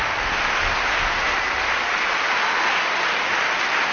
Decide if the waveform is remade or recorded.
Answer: recorded